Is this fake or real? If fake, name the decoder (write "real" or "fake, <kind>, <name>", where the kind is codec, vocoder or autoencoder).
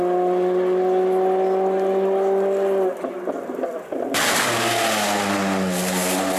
real